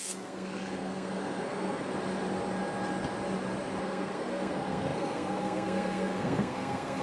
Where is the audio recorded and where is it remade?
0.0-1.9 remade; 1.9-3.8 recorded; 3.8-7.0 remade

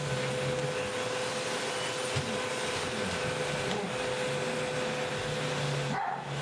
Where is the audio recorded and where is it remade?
0.0-6.4 recorded

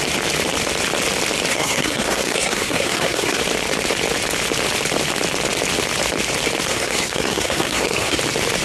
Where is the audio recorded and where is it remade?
0.0-1.5 recorded; 1.5-3.4 remade; 3.4-6.7 recorded; 6.7-8.2 remade; 8.2-8.6 recorded

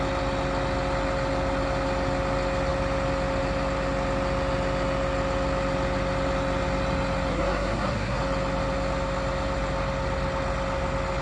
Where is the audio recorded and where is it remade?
0.0-7.3 recorded; 7.3-8.2 remade; 8.2-11.2 recorded

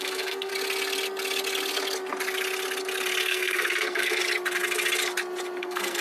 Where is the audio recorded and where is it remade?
0.0-0.5 remade; 0.5-3.2 recorded; 3.2-4.2 remade; 4.2-5.6 recorded; 5.6-6.0 remade

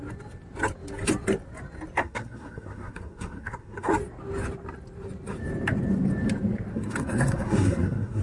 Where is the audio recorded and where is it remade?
0.0-2.0 recorded; 2.0-3.9 remade; 3.9-6.7 recorded; 6.7-8.2 remade

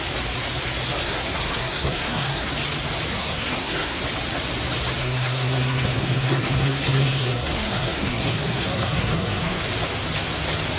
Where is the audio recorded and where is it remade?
0.0-1.0 recorded; 1.0-2.5 remade; 2.5-3.1 recorded; 3.1-4.0 remade; 4.0-5.0 recorded; 5.0-9.6 remade; 9.6-10.8 recorded

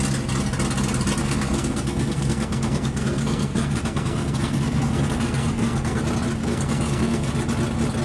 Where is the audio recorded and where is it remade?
0.0-1.2 recorded; 1.2-6.0 remade; 6.0-6.4 recorded; 6.4-7.3 remade; 7.3-8.0 recorded